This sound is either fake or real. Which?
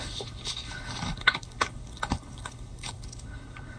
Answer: fake